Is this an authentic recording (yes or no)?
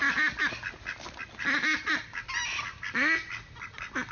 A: yes